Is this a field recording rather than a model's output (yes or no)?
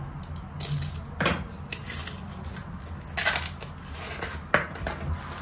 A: yes